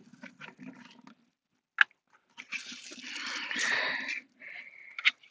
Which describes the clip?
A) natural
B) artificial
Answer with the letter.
A